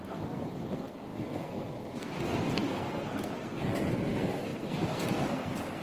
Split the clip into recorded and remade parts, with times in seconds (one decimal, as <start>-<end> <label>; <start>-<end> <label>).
0.0-5.8 remade